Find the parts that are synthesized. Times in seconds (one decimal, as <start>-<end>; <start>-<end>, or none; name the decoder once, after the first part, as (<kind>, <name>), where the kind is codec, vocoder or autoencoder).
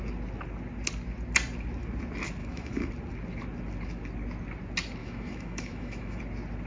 2.4-2.9 (autoencoder, DAC-VAE); 5.0-6.2